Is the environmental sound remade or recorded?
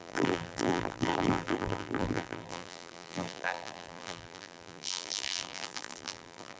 remade